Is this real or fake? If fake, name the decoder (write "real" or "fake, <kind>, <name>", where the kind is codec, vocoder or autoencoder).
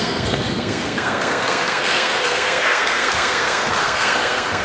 fake, codec, SNAC